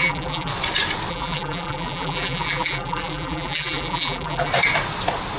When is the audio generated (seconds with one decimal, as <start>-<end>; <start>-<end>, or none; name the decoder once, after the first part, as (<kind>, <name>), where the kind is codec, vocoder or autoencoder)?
0.0-0.5 (vocoder, BigVGAN v2); 1.1-4.5